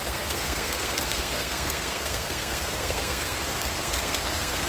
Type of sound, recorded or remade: remade